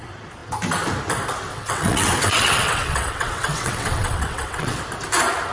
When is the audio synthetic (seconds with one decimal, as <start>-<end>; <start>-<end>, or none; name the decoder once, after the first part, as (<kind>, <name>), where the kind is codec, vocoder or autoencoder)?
1.5-4.8 (vocoder, WaveNeXt)